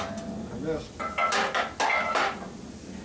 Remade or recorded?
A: recorded